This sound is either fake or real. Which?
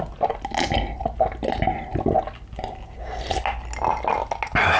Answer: real